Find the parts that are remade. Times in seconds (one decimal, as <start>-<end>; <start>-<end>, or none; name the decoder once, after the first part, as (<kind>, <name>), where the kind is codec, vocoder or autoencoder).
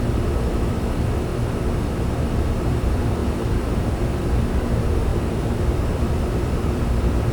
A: 0.0-1.3 (vocoder, BigVGAN v2); 2.3-7.3